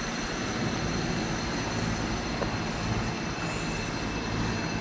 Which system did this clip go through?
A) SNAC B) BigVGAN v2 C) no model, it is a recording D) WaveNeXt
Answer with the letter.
C